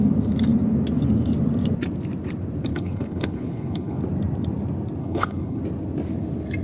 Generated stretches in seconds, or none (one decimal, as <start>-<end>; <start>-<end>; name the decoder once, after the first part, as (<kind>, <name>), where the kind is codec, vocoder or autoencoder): 2.7-4.0 (codec, HILCodec); 5.0-5.6